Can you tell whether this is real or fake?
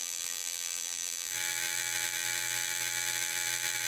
fake